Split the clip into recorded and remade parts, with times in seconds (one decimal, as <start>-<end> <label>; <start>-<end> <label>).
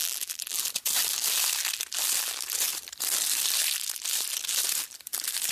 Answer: 0.0-0.6 remade; 0.6-5.5 recorded